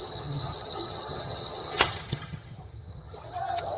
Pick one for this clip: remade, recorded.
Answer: remade